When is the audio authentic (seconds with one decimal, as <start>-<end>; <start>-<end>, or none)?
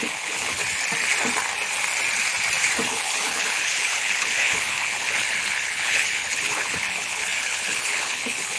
0.6-2.9